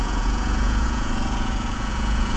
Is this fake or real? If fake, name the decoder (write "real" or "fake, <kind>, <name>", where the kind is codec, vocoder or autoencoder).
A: fake, vocoder, Vocos